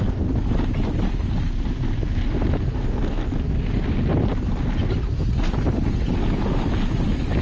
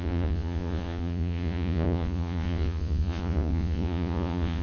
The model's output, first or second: second